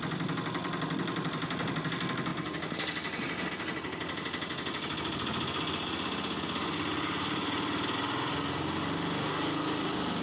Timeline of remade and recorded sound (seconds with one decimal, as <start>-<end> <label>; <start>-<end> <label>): 0.0-0.6 recorded; 0.6-1.9 remade; 1.9-10.2 recorded

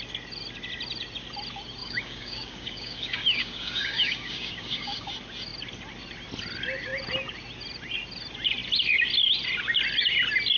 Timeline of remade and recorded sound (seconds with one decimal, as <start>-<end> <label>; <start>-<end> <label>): 0.0-1.8 recorded; 1.8-5.1 remade; 5.1-10.6 recorded

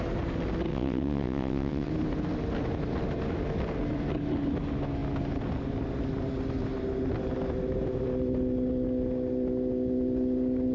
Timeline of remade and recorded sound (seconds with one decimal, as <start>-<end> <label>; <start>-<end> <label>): 0.0-0.7 recorded; 0.7-1.9 remade; 1.9-10.7 recorded

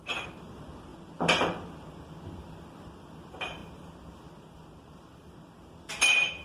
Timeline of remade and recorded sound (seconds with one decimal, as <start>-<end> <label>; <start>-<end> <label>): 0.0-3.6 remade; 3.6-4.3 recorded; 4.3-6.4 remade